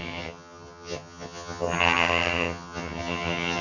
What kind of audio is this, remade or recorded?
remade